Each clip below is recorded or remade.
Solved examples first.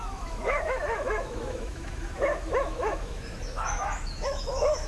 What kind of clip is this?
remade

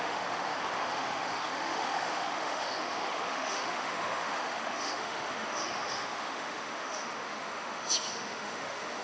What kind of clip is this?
remade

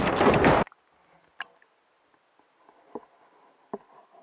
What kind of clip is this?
recorded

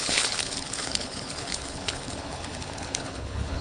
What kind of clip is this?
remade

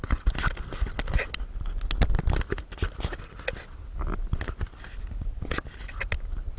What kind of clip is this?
recorded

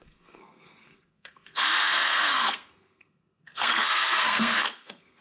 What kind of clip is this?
remade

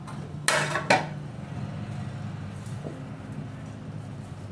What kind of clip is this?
recorded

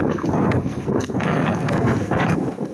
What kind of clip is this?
remade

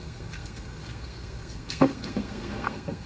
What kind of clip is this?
remade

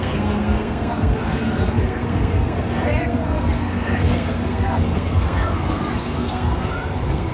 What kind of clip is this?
remade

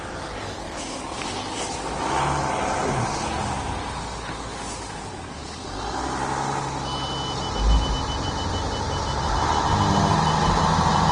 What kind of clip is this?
recorded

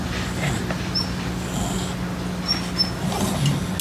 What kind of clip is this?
recorded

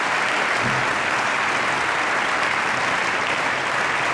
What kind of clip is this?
recorded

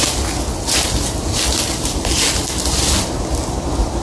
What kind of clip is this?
recorded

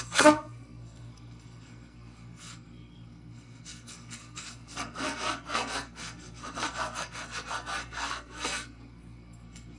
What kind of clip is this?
remade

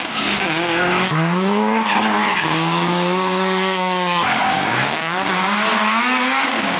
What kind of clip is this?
remade